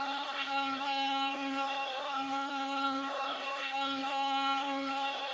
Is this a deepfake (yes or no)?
yes